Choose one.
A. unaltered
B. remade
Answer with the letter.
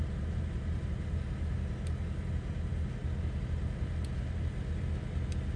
A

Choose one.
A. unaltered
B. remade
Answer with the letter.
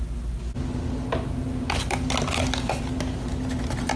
A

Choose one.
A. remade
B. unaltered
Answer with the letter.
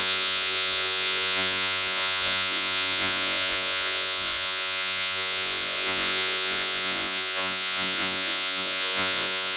A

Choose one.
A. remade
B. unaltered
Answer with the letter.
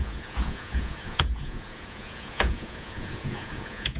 A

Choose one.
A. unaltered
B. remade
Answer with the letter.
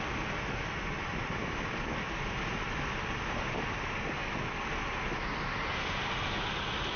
A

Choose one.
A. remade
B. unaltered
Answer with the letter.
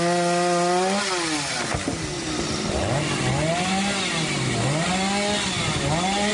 B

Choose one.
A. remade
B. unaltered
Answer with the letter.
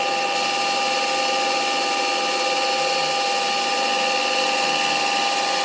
B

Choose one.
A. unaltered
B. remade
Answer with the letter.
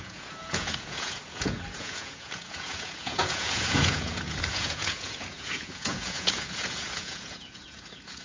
B